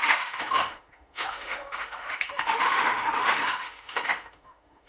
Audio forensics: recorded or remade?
remade